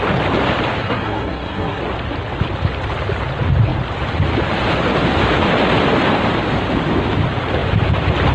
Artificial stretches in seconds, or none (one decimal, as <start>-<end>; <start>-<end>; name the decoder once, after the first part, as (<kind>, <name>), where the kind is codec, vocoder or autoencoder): 0.8-1.8 (codec, SNAC)